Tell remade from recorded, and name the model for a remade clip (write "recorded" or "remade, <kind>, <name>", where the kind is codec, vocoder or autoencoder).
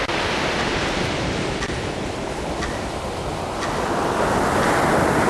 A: recorded